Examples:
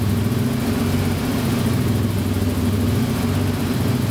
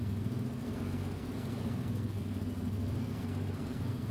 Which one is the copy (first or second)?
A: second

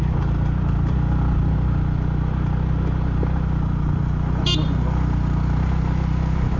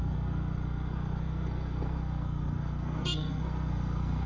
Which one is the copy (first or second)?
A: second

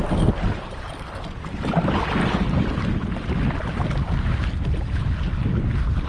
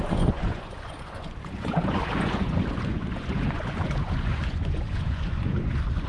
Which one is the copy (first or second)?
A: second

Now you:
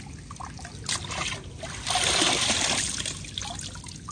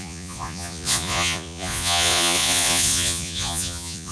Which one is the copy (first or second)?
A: second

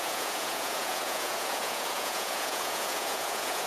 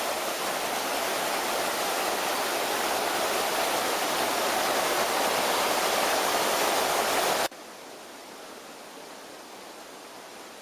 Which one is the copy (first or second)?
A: first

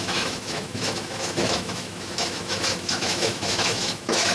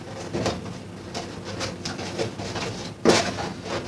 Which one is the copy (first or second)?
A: first